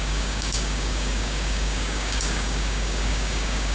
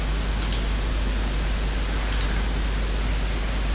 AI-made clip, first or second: first